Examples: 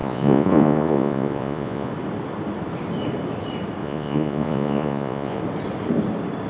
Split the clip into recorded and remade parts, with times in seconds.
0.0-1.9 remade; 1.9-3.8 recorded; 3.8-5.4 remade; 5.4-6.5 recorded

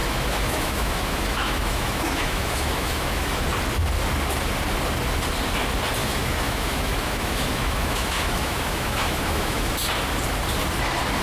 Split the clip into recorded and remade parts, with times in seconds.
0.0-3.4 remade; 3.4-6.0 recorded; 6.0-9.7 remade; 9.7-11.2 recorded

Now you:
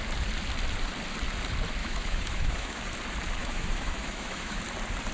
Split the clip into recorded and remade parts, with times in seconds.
0.0-1.8 recorded; 1.8-2.8 remade; 2.8-3.4 recorded; 3.4-4.6 remade; 4.6-5.1 recorded